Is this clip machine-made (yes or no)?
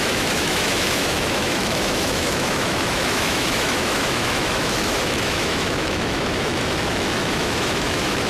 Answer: yes